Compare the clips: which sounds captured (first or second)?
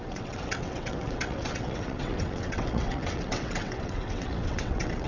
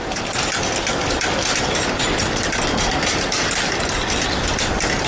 second